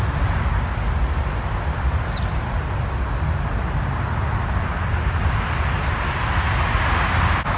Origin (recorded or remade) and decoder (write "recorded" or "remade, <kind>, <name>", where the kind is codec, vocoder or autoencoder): recorded